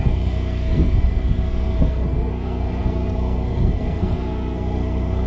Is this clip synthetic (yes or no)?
yes